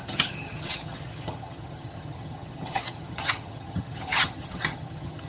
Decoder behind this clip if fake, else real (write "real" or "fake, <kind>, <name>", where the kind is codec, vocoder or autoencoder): fake, vocoder, HiFi-GAN